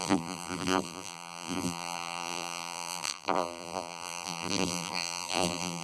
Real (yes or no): no